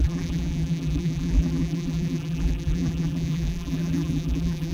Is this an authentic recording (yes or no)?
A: no